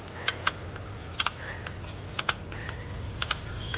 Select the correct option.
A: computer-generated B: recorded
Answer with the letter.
B